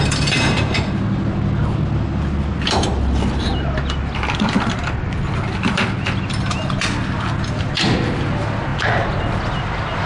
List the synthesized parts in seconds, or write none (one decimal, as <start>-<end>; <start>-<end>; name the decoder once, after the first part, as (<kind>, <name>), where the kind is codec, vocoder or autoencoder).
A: none